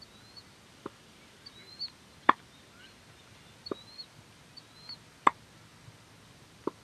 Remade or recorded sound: recorded